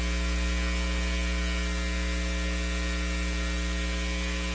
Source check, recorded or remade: recorded